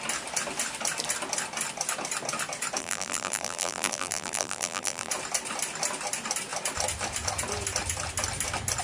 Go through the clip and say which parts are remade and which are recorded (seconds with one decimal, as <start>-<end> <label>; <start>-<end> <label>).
0.0-2.8 recorded; 2.8-5.1 remade; 5.1-8.8 recorded